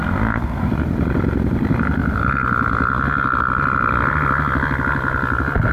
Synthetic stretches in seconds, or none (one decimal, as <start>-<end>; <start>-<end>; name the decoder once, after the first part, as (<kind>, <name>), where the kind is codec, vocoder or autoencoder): 0.0-0.7 (codec, SNAC)